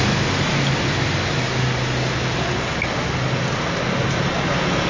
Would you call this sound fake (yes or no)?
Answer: no